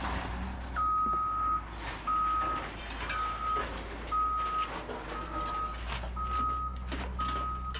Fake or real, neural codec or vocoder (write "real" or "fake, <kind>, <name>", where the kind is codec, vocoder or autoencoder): real